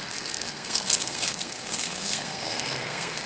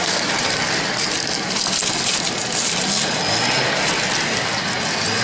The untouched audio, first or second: second